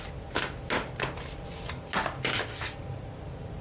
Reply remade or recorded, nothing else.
recorded